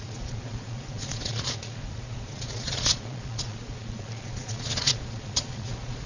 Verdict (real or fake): fake